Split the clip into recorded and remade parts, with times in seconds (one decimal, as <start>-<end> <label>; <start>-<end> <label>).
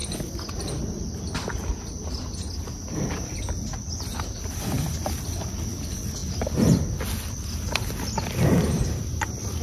0.0-9.6 recorded